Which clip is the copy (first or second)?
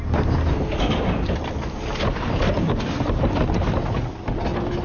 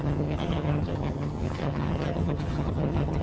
second